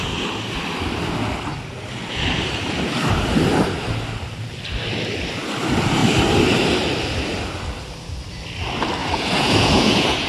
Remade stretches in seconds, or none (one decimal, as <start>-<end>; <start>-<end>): 9.0-10.3